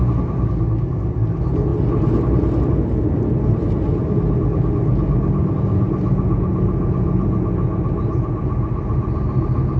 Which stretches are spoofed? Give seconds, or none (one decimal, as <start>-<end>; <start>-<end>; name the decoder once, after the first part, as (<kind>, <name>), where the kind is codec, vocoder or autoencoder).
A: none